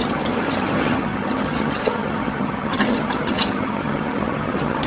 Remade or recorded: remade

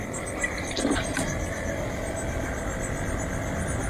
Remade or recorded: recorded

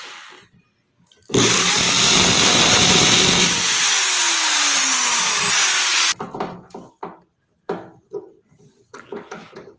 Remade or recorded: recorded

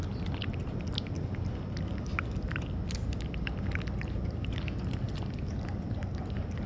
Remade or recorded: recorded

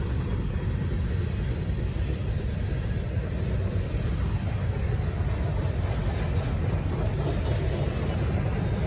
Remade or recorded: recorded